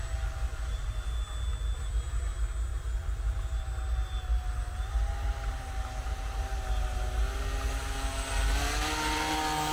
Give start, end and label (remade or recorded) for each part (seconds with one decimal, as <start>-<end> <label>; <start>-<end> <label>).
0.0-9.7 recorded